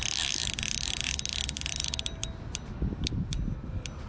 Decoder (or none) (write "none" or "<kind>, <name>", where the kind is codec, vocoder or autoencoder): none